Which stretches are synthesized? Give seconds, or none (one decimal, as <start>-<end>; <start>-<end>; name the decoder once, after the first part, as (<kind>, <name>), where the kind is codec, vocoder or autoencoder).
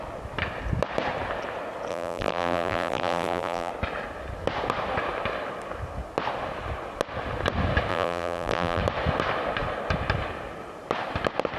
1.9-3.7 (vocoder, BigVGAN v2); 7.9-8.8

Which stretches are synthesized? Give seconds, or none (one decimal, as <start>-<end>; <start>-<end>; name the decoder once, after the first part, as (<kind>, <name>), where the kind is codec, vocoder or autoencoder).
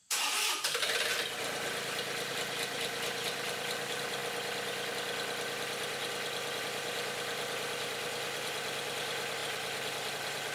0.0-1.1 (vocoder, BigVGAN v2); 2.3-4.2; 6.6-10.5